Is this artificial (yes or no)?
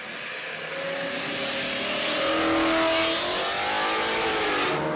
no